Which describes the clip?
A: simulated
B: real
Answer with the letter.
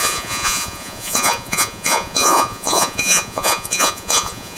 A